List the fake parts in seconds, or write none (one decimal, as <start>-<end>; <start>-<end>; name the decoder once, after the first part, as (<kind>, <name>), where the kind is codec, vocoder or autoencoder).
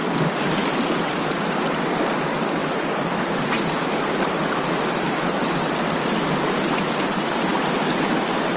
none